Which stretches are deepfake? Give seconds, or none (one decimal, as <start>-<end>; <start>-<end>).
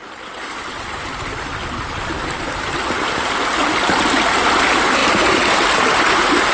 none